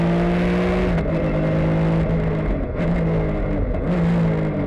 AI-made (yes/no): no